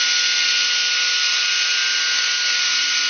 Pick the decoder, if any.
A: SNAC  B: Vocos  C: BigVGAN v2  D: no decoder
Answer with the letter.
D